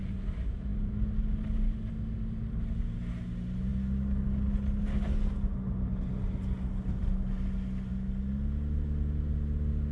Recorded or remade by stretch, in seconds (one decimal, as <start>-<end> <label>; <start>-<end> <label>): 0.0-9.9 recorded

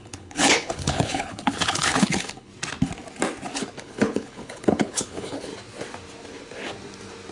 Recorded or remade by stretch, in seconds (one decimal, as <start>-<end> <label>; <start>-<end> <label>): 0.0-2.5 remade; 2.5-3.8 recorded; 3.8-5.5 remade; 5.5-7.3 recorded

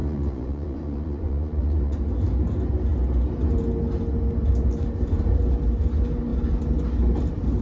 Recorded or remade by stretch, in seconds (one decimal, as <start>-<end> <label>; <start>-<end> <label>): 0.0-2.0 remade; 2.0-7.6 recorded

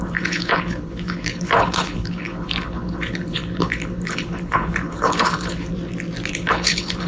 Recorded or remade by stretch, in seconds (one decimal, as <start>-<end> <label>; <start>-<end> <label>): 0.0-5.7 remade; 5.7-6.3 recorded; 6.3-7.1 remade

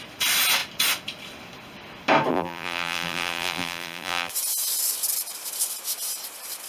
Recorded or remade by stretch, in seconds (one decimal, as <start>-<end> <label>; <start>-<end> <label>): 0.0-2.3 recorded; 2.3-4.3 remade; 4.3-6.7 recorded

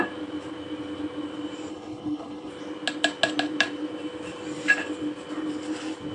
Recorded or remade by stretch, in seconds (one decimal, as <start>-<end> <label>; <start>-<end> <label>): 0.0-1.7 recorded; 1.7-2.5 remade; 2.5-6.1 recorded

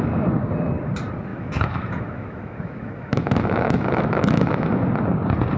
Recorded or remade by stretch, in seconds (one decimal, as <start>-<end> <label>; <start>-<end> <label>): 0.0-1.3 recorded; 1.3-4.7 remade; 4.7-5.6 recorded